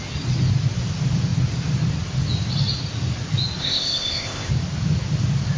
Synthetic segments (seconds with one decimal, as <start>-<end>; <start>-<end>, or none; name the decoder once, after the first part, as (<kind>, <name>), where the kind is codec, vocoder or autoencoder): 3.6-4.5 (codec, ZipCodec)